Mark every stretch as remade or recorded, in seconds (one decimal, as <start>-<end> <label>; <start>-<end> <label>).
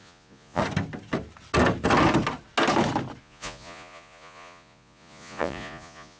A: 0.0-0.6 remade; 0.6-3.2 recorded; 3.2-6.2 remade